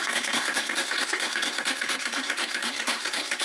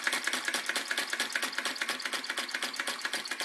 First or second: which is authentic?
second